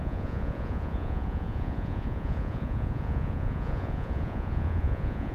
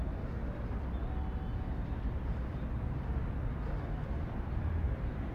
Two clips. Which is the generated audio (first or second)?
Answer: first